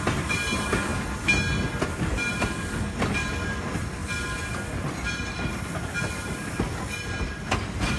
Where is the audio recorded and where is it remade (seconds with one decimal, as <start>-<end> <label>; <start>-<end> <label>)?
0.0-8.0 recorded